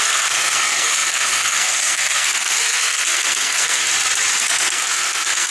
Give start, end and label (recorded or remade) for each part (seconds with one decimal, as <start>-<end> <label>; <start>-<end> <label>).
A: 0.0-3.8 remade; 3.8-4.4 recorded; 4.4-5.5 remade